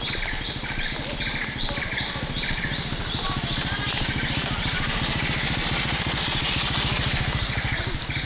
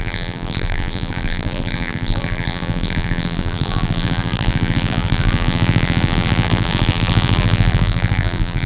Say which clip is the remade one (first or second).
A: second